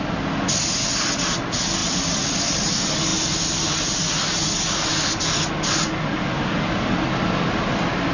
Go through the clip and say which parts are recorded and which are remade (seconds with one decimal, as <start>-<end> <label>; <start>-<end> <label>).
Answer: 0.0-1.8 recorded; 1.8-2.4 remade; 2.4-8.1 recorded

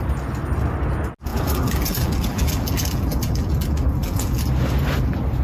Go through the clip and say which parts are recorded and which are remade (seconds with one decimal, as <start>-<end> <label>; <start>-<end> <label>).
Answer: 0.0-1.3 recorded; 1.3-4.5 remade; 4.5-5.4 recorded

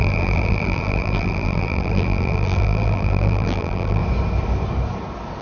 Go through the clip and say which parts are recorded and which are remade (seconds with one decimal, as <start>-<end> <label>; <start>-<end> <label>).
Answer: 0.0-4.0 remade; 4.0-5.4 recorded

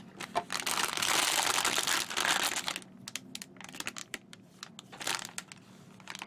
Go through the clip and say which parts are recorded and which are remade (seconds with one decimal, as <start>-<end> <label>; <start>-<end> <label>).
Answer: 0.0-4.0 recorded; 4.0-4.7 remade; 4.7-6.3 recorded

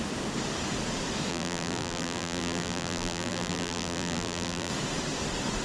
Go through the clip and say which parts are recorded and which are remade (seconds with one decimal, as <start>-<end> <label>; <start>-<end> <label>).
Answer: 0.0-1.3 recorded; 1.3-4.7 remade; 4.7-5.6 recorded

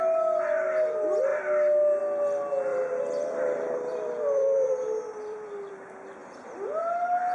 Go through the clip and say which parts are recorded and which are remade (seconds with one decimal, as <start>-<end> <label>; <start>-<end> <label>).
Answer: 0.0-2.7 recorded; 2.7-5.7 remade; 5.7-7.3 recorded

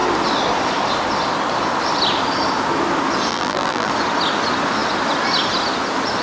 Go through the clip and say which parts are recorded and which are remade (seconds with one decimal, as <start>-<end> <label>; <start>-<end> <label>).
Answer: 0.0-3.3 recorded; 3.3-3.9 remade; 3.9-6.2 recorded